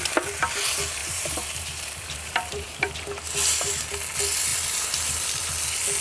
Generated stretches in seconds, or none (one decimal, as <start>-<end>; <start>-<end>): 1.0-2.9